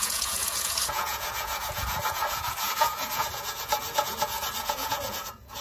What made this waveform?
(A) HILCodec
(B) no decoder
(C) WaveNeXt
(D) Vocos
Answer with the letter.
D